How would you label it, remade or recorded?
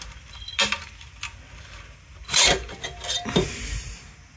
recorded